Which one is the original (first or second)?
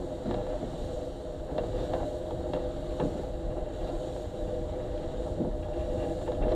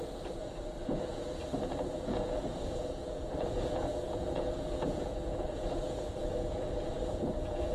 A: first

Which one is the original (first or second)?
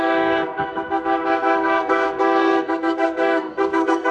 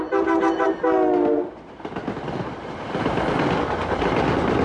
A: second